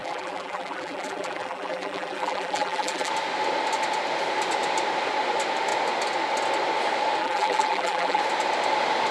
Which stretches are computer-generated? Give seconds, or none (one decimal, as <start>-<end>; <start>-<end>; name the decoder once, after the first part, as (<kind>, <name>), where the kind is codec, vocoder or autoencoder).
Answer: 0.0-3.1 (vocoder, BigVGAN v2); 7.2-8.2

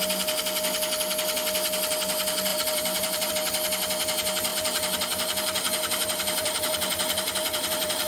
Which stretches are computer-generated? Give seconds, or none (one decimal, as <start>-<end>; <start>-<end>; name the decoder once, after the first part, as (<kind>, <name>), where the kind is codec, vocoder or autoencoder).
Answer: 2.5-3.3 (vocoder, BigVGAN v2); 4.5-8.1